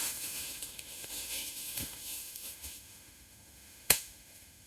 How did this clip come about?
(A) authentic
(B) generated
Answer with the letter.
B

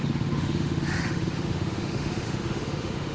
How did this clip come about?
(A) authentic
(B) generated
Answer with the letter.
B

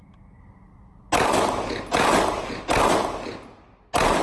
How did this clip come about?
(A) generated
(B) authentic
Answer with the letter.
B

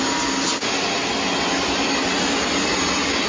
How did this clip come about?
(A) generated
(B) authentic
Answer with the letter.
B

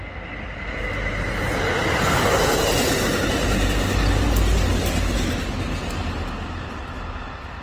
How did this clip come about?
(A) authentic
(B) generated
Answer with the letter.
A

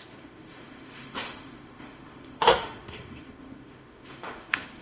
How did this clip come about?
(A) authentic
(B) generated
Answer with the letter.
B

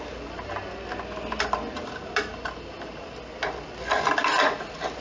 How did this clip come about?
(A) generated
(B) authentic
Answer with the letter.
B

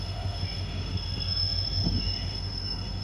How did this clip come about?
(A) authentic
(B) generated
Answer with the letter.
B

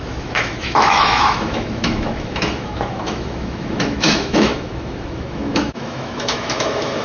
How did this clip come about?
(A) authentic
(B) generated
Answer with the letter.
B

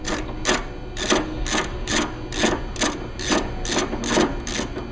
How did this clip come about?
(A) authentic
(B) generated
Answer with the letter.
A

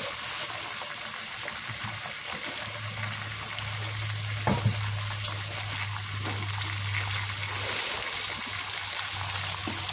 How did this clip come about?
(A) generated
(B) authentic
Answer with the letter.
B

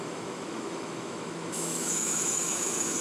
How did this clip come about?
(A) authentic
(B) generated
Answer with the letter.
B